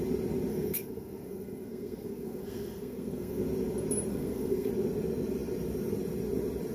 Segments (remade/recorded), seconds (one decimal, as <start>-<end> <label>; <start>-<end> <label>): 0.0-0.5 recorded; 0.5-3.4 remade; 3.4-4.1 recorded; 4.1-4.7 remade; 4.7-6.7 recorded